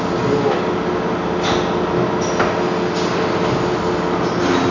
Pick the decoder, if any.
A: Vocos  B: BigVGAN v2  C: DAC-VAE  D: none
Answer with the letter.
D